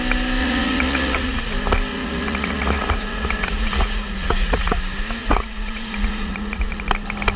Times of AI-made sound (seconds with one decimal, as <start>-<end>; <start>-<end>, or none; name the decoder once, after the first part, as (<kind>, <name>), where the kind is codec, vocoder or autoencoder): 0.4-1.4 (vocoder, Vocos); 1.9-4.8; 5.2-6.9